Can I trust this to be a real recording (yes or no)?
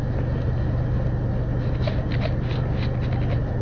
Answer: yes